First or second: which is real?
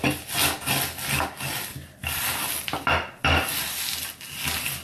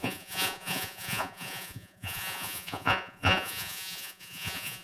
first